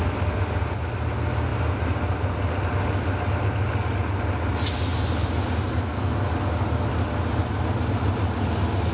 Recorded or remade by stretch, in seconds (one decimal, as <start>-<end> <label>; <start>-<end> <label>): 0.0-8.9 recorded